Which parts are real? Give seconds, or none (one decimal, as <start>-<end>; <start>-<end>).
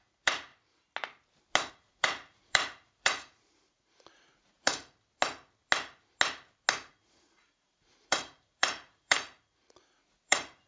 0.5-1.7; 4.8-6.9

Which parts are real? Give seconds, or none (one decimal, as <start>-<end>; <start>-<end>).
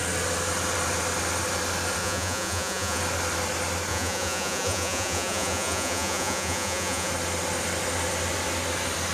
0.0-2.0; 3.0-3.9; 7.1-9.1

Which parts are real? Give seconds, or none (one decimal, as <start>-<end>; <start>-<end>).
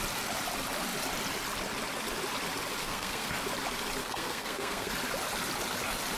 0.0-2.8; 3.3-4.0; 4.9-6.2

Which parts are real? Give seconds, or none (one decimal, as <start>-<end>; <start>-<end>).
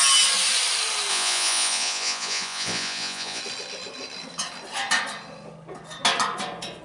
0.0-1.1; 3.4-6.8